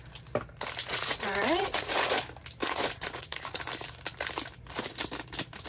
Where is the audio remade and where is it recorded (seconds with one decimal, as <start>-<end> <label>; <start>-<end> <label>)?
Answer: 0.0-0.9 recorded; 0.9-2.2 remade; 2.2-2.6 recorded; 2.6-3.6 remade; 3.6-5.7 recorded